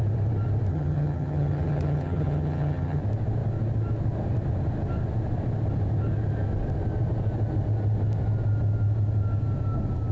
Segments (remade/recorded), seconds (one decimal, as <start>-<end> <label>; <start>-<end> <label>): 0.0-0.7 recorded; 0.7-3.0 remade; 3.0-10.1 recorded

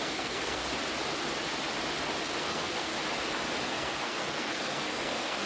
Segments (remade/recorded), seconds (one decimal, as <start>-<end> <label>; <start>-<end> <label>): 0.0-0.6 remade; 0.6-2.4 recorded; 2.4-2.9 remade; 2.9-3.6 recorded; 3.6-5.5 remade

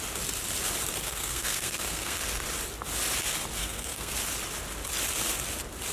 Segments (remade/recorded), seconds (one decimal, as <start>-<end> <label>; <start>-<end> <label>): 0.0-1.0 recorded; 1.0-2.2 remade; 2.2-3.6 recorded; 3.6-4.1 remade; 4.1-5.9 recorded

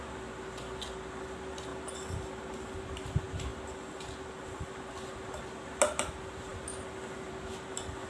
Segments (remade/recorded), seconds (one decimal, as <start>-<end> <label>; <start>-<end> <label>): 0.0-8.1 recorded

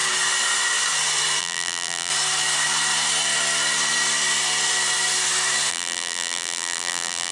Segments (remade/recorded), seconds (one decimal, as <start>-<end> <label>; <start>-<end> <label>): 0.0-1.4 recorded; 1.4-2.1 remade; 2.1-5.7 recorded; 5.7-7.3 remade